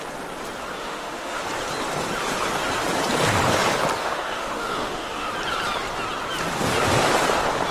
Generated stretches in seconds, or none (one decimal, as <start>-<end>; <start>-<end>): 0.8-1.4; 4.0-5.3